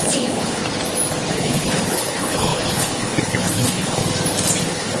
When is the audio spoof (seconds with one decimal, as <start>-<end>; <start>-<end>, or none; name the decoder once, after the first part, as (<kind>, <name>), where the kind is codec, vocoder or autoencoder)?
0.0-0.6 (codec, HILCodec); 1.3-4.0; 4.6-5.0

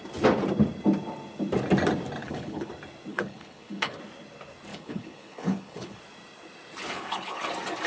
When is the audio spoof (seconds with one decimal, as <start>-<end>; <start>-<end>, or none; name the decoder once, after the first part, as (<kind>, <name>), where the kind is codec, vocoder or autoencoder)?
2.2-2.7 (codec, HILCodec); 3.1-4.0; 4.7-6.0; 6.8-7.5

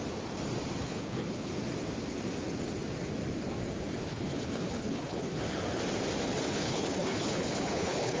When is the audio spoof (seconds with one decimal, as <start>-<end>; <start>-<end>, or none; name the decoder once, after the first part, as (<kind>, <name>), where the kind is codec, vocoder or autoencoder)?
0.8-1.5 (codec, HILCodec); 4.1-5.4; 6.5-8.2

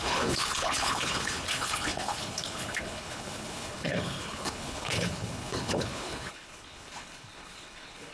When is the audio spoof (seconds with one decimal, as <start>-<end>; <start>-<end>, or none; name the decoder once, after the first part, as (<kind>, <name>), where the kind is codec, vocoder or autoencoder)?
0.0-8.1 (codec, HILCodec)